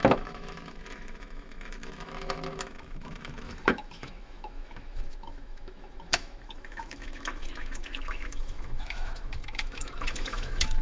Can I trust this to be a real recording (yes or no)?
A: no